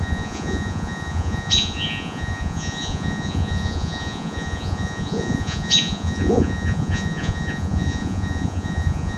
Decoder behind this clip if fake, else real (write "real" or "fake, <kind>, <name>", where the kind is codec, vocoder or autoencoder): fake, vocoder, Vocos